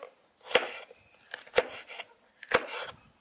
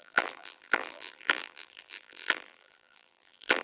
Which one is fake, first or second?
second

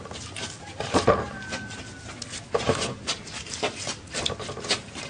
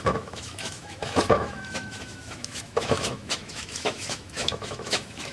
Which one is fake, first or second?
second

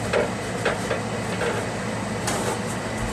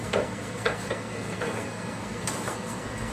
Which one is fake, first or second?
second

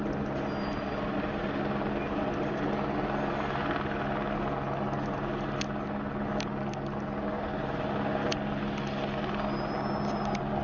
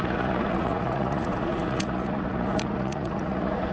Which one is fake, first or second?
second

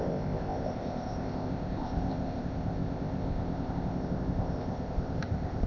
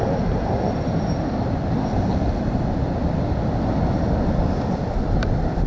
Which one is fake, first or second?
first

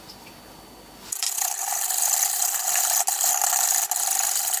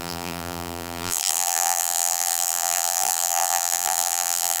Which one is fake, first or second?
second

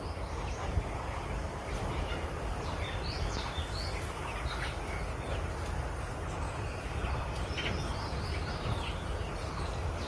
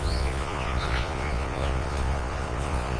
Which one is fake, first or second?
second